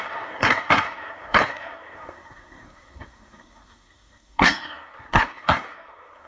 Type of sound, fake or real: fake